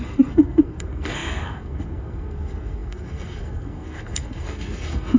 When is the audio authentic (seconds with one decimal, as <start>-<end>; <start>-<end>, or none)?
none